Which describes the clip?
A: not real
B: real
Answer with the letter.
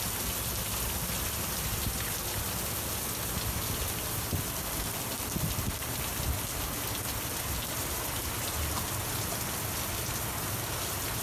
B